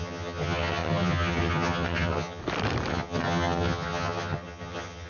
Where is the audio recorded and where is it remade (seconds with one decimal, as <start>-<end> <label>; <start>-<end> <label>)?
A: 0.0-2.4 remade; 2.4-2.9 recorded; 2.9-5.1 remade